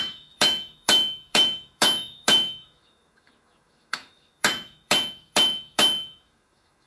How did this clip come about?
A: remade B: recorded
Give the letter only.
A